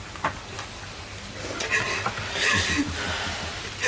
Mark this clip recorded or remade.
recorded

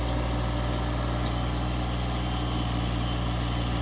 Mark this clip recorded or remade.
recorded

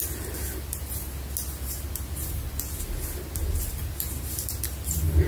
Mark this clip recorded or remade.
recorded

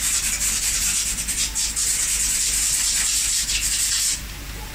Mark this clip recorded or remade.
remade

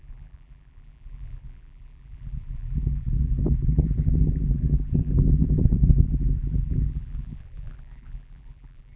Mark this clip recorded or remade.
remade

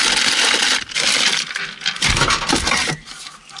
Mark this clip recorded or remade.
recorded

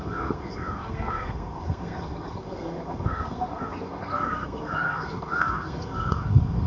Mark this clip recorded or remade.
remade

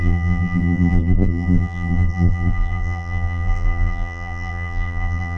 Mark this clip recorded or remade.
remade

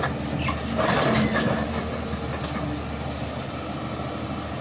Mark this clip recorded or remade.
recorded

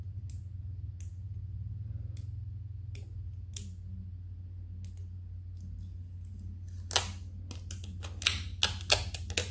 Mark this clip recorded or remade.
recorded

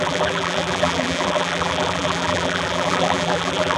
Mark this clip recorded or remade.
remade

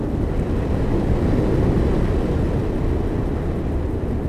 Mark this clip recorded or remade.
recorded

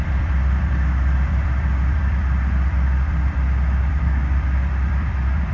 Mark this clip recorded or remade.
remade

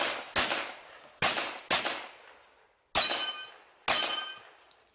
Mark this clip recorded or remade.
recorded